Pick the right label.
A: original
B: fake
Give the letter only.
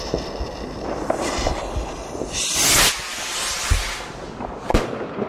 A